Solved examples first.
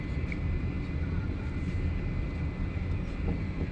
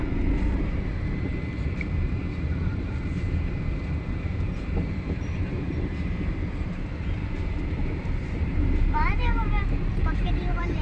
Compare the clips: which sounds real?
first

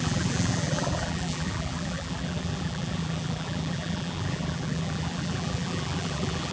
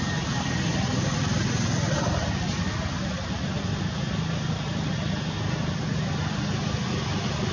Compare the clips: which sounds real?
second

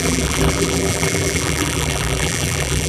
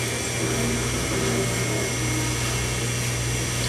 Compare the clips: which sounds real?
second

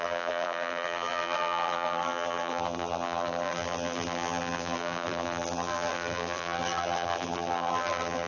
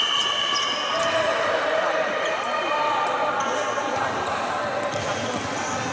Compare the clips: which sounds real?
second